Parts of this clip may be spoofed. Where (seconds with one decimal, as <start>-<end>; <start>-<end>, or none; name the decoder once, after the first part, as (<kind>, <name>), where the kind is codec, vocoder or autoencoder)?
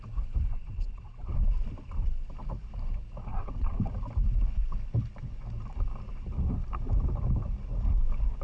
0.5-1.3 (vocoder, WaveNeXt); 3.3-3.9